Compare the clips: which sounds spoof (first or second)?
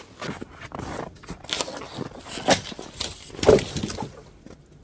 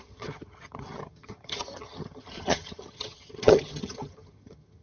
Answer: second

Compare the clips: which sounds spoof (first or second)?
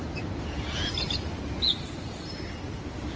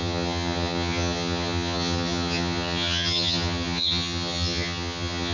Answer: second